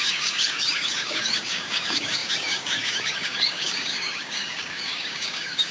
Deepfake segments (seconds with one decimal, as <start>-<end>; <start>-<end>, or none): 0.0-5.7